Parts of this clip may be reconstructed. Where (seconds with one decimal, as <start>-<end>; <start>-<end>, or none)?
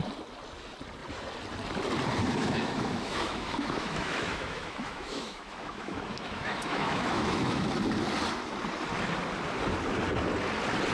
2.4-7.7